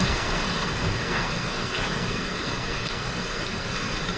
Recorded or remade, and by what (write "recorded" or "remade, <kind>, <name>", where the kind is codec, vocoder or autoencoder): remade, codec, SNAC